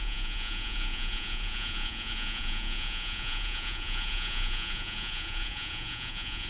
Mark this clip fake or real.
fake